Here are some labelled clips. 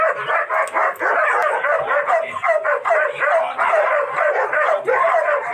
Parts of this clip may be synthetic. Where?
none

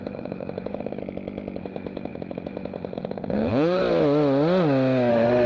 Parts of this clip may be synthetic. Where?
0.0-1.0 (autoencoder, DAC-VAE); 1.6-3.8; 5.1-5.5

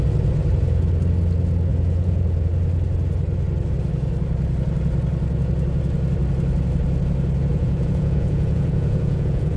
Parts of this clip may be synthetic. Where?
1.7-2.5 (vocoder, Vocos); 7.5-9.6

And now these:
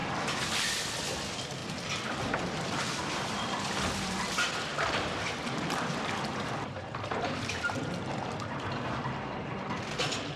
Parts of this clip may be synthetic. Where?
0.0-1.6 (vocoder, BigVGAN v2); 2.5-10.4